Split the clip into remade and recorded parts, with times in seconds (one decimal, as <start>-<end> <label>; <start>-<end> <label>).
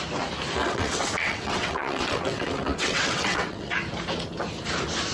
0.0-0.6 recorded; 0.6-3.7 remade; 3.7-5.1 recorded